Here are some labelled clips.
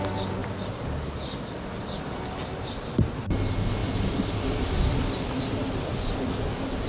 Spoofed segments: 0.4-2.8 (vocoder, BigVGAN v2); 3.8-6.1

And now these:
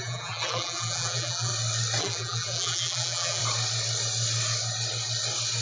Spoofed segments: 0.0-1.5 (vocoder, BigVGAN v2); 2.0-3.4

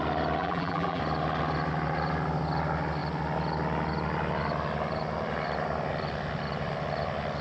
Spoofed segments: 0.4-1.0 (vocoder, BigVGAN v2)

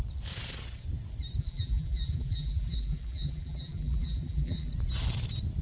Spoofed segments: 1.4-4.7 (vocoder, BigVGAN v2)

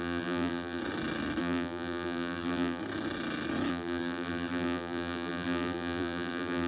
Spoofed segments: 0.0-0.8 (vocoder, BigVGAN v2); 1.4-2.8; 3.7-6.7

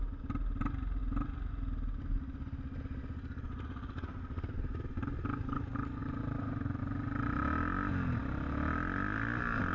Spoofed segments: 4.1-4.7 (vocoder, BigVGAN v2); 6.0-6.8